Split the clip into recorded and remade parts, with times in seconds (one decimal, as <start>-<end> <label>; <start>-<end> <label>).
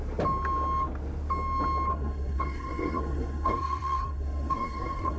0.0-1.9 recorded; 1.9-5.2 remade